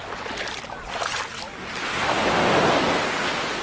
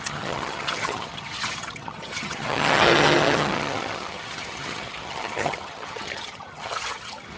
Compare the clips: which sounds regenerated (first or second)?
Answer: second